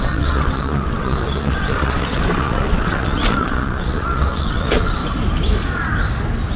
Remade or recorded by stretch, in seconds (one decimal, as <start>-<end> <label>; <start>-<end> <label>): 0.0-5.0 remade; 5.0-6.6 recorded

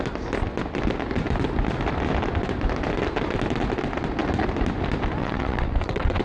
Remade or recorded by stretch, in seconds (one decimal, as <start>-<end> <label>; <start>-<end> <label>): 0.0-5.2 recorded; 5.2-6.2 remade

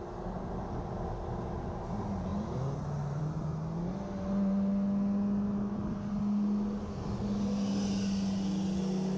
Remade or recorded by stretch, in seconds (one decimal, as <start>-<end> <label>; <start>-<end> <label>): 0.0-9.2 recorded

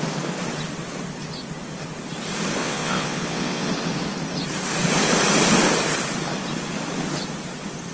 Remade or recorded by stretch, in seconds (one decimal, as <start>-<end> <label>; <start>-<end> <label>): 0.0-2.6 recorded; 2.6-3.7 remade; 3.7-7.9 recorded

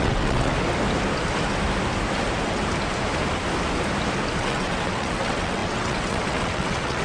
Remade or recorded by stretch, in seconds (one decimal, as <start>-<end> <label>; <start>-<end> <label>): 0.0-0.5 remade; 0.5-4.4 recorded; 4.4-7.0 remade

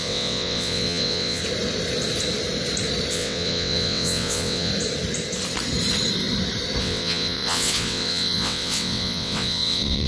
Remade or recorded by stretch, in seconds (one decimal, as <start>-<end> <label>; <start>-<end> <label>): 0.0-1.4 remade; 1.4-3.1 recorded; 3.1-4.7 remade; 4.7-6.8 recorded; 6.8-10.1 remade

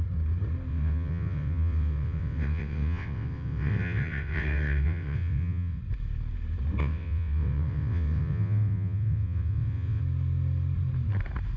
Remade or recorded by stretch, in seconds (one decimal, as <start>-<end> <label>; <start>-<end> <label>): 0.0-0.7 recorded; 0.7-5.8 remade; 5.8-6.8 recorded; 6.8-10.0 remade; 10.0-11.6 recorded

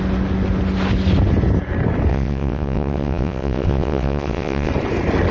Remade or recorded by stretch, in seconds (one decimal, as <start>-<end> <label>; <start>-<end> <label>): 0.0-2.1 recorded; 2.1-4.7 remade; 4.7-5.3 recorded